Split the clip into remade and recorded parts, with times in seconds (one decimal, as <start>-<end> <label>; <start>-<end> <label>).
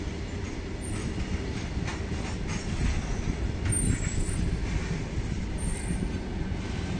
0.0-7.0 recorded